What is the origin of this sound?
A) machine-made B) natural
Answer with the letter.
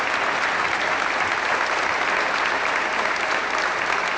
B